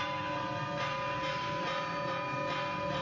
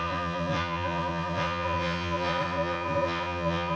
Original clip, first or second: first